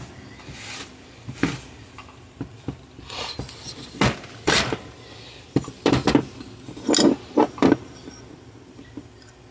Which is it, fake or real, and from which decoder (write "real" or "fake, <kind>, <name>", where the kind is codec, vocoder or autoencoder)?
fake, vocoder, BigVGAN v2